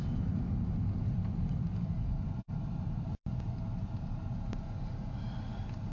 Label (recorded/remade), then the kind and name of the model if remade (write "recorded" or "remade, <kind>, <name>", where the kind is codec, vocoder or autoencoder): recorded